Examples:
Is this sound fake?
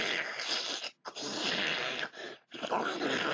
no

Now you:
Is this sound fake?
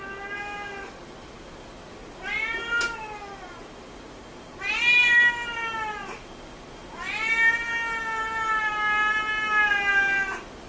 no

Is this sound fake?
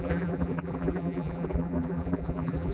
yes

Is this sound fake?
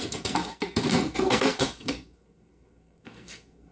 yes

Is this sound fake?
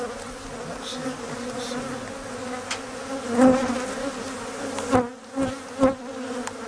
no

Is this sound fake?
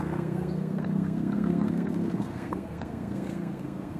yes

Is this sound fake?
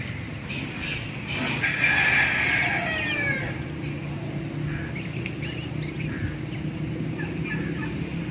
no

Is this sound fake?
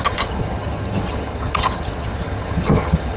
yes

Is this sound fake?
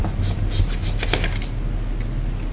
no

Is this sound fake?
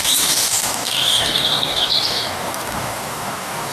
yes